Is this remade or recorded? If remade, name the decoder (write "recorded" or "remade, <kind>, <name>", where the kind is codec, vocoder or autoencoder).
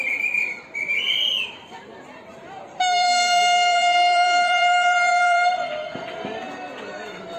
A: remade, vocoder, BigVGAN v2